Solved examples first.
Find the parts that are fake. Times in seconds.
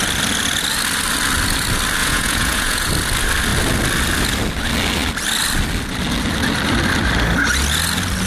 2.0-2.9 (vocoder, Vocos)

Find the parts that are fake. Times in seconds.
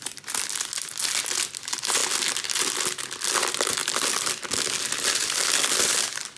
none